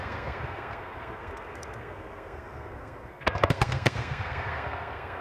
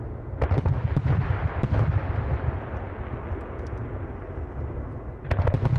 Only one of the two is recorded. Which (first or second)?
second